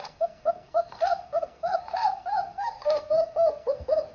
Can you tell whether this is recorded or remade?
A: remade